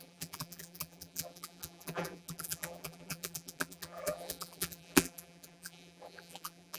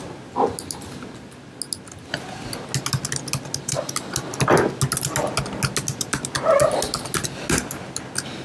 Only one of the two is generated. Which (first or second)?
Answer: first